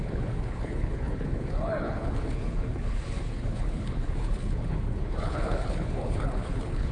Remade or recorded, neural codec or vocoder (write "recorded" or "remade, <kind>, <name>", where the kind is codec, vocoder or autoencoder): remade, codec, HILCodec